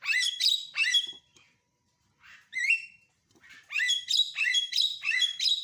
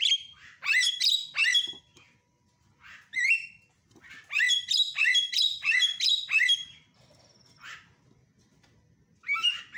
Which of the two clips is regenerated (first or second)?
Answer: first